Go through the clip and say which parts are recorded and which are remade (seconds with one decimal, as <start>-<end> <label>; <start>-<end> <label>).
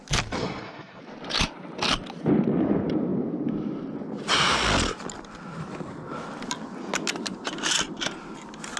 0.0-0.4 recorded; 0.4-1.0 remade; 1.0-8.8 recorded